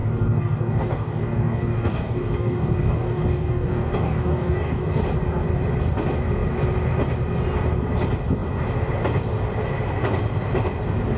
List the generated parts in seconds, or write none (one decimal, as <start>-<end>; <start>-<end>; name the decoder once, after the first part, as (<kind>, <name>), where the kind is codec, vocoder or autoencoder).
0.0-5.0 (codec, DAC)